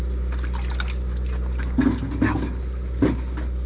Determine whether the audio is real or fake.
real